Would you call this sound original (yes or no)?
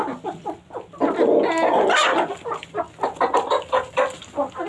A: yes